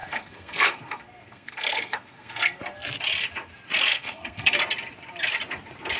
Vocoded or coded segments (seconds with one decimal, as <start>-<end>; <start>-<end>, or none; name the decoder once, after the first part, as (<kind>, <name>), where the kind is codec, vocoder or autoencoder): 0.0-2.6 (codec, SNAC); 3.9-4.6